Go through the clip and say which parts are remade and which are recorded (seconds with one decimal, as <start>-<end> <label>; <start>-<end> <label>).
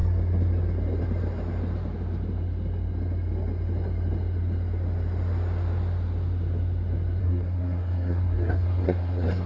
0.0-7.2 recorded; 7.2-9.5 remade